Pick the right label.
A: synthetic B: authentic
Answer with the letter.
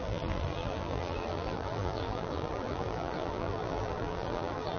A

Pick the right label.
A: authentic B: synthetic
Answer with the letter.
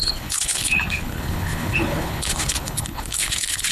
B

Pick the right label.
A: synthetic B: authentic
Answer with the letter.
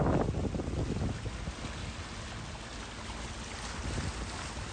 B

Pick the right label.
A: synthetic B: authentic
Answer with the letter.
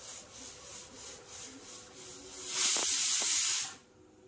B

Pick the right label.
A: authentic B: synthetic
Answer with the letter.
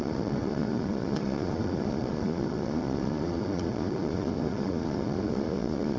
B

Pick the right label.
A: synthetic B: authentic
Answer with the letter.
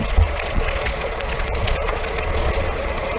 A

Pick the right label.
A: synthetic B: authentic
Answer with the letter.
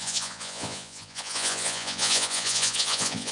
A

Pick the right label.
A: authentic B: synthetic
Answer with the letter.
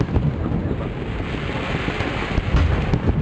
A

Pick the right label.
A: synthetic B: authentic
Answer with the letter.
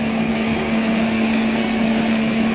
A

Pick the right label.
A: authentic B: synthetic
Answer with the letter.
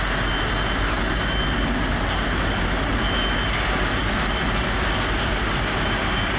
A